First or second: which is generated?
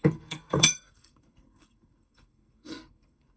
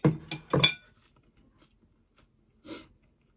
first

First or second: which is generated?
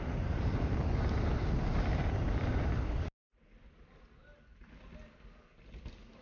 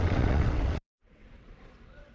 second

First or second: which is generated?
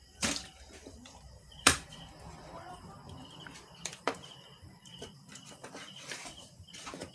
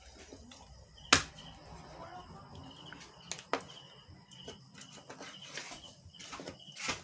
first